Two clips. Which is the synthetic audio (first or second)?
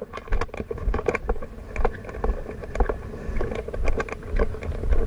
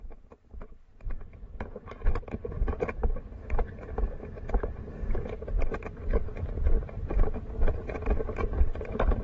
second